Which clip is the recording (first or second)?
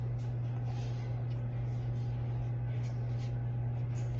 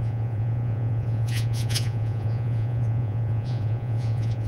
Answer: first